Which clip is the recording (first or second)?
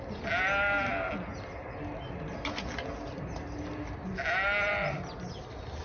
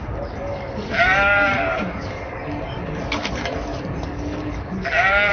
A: first